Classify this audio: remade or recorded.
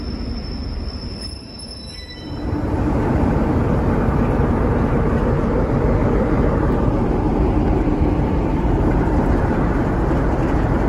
remade